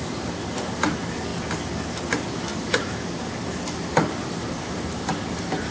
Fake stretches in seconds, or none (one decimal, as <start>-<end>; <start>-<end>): none